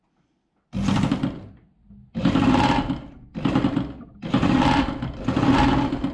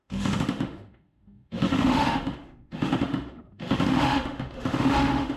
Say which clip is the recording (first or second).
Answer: first